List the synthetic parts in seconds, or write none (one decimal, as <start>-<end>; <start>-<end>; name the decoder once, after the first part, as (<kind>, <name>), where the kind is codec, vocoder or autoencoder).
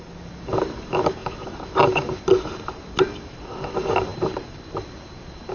4.1-5.5 (vocoder, BigVGAN v2)